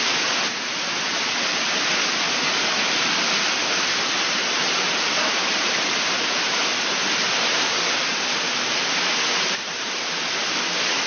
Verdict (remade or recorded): recorded